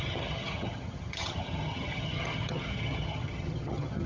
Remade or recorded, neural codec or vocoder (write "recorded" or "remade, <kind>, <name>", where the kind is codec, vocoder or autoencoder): remade, vocoder, HiFi-GAN